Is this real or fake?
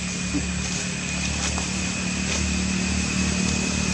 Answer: real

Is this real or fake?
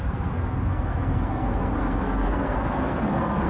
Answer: fake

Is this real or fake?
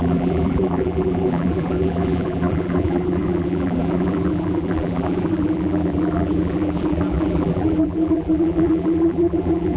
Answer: fake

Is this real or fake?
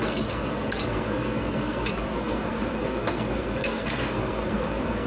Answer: fake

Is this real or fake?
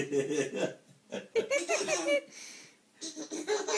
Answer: real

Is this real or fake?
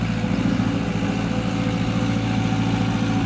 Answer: real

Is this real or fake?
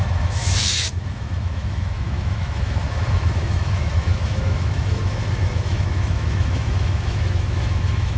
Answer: fake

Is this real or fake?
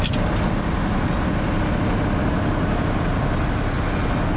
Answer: real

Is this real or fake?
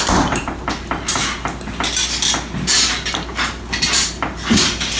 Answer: real